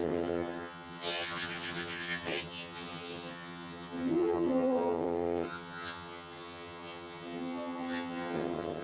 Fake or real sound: fake